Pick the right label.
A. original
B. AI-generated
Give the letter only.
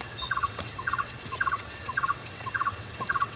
B